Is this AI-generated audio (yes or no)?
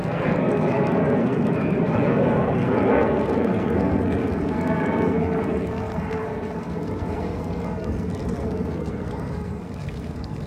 yes